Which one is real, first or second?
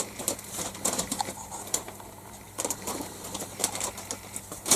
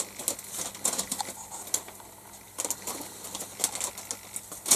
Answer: second